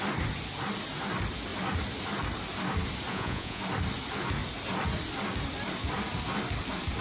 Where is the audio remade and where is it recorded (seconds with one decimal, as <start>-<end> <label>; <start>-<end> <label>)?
0.0-3.1 recorded; 3.1-3.6 remade; 3.6-7.0 recorded